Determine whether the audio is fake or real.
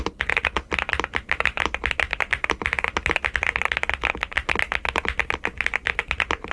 real